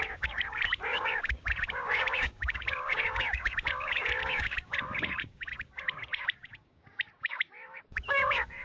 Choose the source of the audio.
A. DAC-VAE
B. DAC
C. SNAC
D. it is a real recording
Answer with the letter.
B